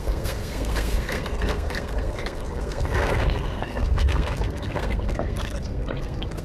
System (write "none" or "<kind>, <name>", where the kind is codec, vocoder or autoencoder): codec, SNAC